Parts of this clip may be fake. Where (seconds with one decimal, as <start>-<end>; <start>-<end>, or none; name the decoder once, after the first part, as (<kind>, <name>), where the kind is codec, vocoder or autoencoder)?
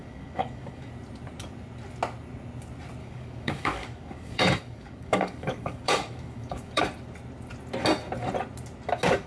0.0-0.9 (codec, DAC); 3.0-6.8